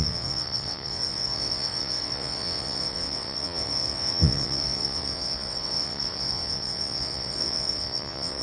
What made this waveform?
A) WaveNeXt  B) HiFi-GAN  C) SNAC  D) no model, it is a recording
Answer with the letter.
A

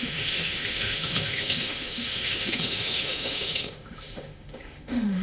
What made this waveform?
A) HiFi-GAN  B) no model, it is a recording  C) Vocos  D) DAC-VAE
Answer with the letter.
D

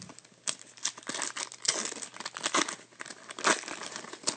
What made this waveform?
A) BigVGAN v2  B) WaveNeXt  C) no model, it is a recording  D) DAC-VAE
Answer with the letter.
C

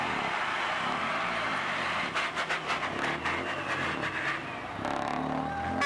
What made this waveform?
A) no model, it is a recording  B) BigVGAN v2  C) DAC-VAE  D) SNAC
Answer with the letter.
A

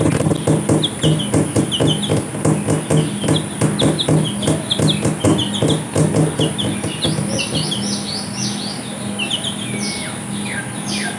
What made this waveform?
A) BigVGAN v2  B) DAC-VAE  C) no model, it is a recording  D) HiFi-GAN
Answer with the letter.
C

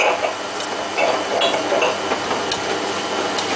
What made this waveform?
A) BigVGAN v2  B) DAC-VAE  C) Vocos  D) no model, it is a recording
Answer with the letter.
D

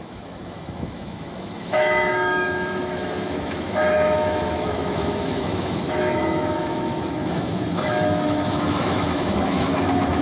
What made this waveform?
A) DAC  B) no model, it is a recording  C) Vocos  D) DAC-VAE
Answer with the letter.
D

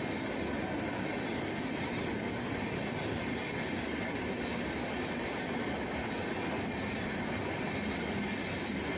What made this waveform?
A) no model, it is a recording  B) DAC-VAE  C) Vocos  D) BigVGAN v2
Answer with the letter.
A